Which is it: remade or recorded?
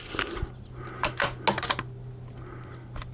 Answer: recorded